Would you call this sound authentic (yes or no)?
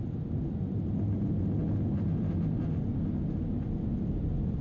yes